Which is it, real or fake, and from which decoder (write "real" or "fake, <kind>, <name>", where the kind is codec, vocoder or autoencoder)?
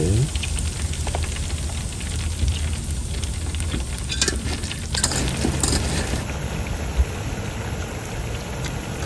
real